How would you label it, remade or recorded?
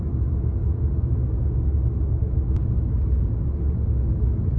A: recorded